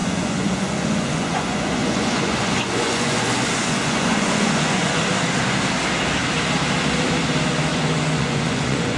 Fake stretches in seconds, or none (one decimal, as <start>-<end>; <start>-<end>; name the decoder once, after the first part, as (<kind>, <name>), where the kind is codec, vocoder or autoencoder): 0.0-5.0 (vocoder, Vocos); 7.7-9.0

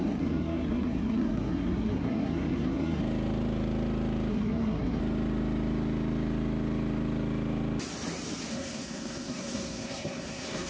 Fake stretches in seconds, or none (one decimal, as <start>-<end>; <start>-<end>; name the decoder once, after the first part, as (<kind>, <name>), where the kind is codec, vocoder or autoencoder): 0.0-3.0 (codec, SNAC); 4.3-5.0; 8.5-10.7